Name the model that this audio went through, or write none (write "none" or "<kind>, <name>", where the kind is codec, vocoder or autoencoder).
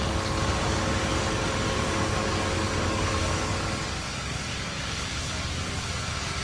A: codec, DAC